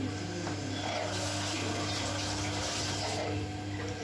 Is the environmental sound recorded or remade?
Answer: recorded